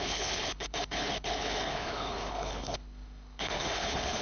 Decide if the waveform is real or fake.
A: fake